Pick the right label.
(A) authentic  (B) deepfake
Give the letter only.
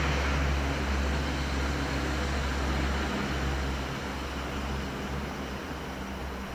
A